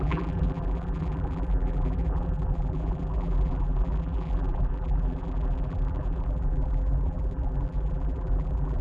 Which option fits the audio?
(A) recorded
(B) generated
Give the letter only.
B